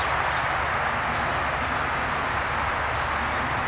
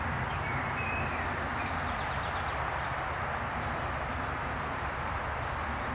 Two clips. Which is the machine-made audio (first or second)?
second